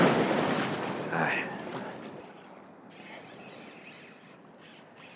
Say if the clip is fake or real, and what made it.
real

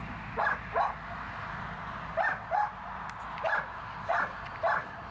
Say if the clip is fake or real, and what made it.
real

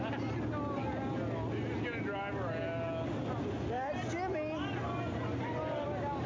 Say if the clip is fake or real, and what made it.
real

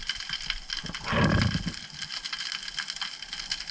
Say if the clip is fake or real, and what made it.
real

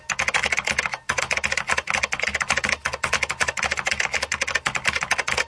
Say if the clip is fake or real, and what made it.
real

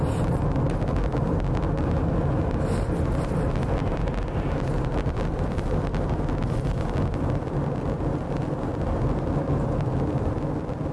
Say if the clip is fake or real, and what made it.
real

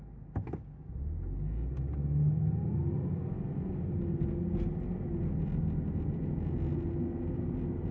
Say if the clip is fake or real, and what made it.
real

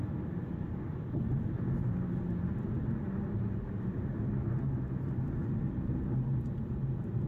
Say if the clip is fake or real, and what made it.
real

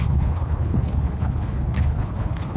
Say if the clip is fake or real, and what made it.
fake, codec, HILCodec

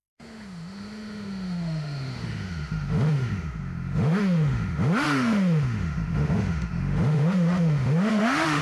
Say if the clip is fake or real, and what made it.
fake, autoencoder, DAC-VAE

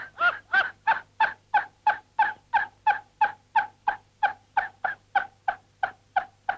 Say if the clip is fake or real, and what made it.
real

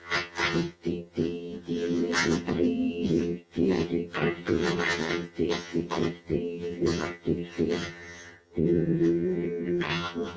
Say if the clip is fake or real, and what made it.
fake, vocoder, HiFi-GAN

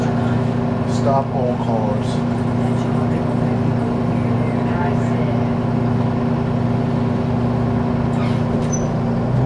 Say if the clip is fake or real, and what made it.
real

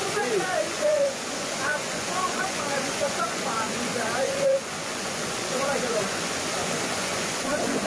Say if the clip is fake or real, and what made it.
fake, vocoder, Vocos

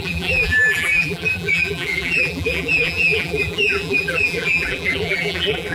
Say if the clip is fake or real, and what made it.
fake, vocoder, BigVGAN v2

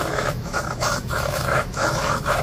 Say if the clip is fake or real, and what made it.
fake, autoencoder, DAC-VAE